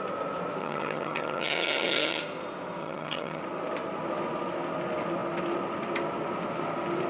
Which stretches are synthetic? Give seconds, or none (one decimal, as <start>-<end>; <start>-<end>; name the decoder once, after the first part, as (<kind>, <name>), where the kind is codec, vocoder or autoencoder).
0.6-2.2 (vocoder, HiFi-GAN); 2.8-3.4